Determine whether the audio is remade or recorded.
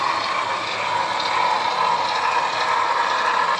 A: recorded